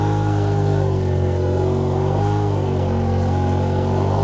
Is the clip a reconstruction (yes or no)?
yes